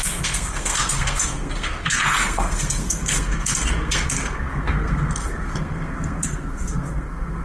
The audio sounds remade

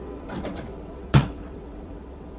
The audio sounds remade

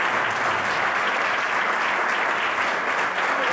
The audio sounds recorded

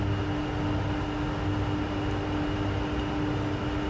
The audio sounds recorded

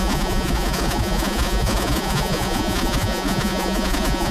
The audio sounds remade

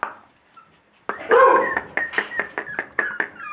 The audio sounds recorded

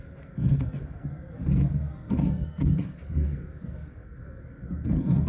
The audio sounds remade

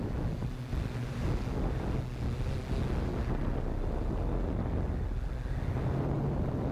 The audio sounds recorded